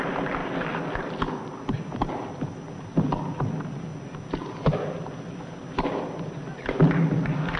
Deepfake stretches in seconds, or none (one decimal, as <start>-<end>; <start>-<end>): none